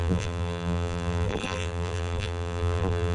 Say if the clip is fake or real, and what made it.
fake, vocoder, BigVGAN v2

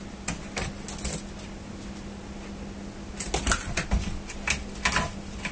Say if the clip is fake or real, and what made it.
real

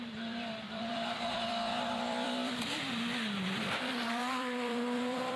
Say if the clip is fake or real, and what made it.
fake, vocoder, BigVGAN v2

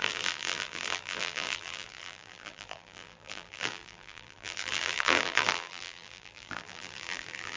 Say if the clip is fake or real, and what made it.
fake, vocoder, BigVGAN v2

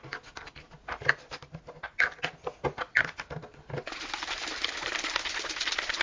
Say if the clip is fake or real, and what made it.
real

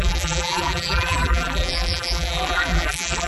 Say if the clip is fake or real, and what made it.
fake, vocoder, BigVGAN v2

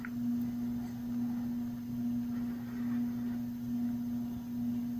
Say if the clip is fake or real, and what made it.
real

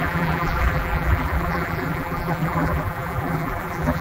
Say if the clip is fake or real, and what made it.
fake, vocoder, BigVGAN v2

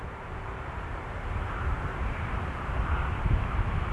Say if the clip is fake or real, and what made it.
fake, vocoder, BigVGAN v2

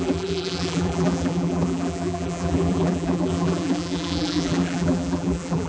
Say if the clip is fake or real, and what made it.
fake, vocoder, BigVGAN v2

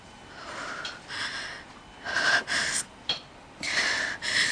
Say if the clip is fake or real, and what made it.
fake, vocoder, BigVGAN v2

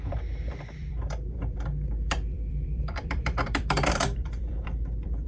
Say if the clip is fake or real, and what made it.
fake, vocoder, BigVGAN v2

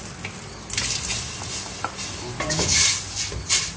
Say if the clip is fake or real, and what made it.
real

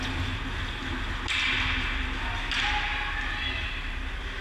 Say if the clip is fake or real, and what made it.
real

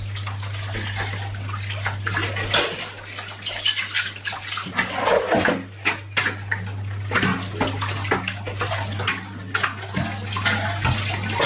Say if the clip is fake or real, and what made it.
real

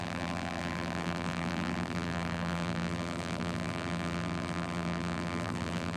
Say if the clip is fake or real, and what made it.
fake, vocoder, BigVGAN v2